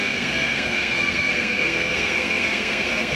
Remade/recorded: remade